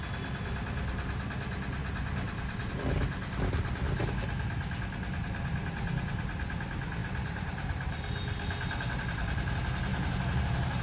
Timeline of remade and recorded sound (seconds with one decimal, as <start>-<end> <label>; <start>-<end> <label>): 0.0-1.8 recorded; 1.8-2.7 remade; 2.7-7.0 recorded; 7.0-9.5 remade; 9.5-9.9 recorded; 9.9-10.8 remade